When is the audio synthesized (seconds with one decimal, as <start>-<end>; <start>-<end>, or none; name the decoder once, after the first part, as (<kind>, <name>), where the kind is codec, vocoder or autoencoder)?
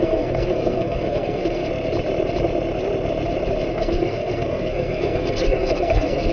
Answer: 0.0-1.6 (codec, SNAC); 3.7-6.3